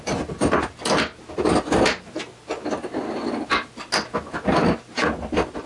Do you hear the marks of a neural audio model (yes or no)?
no